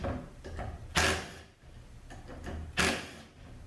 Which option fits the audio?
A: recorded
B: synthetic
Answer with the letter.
A